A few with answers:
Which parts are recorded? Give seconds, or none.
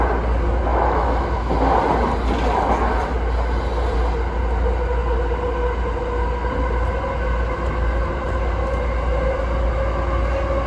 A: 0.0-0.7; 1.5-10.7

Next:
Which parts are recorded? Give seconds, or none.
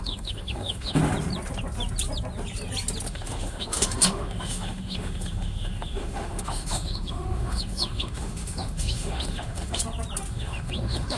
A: 1.0-3.1; 9.8-10.3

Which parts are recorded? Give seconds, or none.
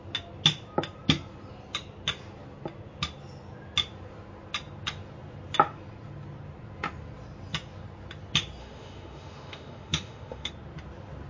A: 0.0-8.6; 10.5-11.3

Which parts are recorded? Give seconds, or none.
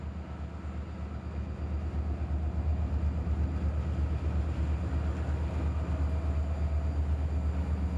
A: 0.0-8.0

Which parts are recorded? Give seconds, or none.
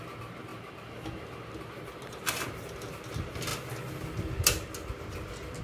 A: 0.0-5.6